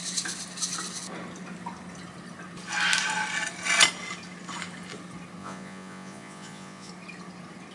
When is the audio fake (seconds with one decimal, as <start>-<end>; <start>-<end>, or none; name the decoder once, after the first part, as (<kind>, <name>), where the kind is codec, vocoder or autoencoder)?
5.4-6.9 (vocoder, Vocos)